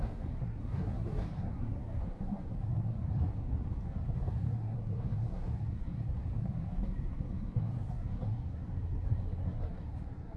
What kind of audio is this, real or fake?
fake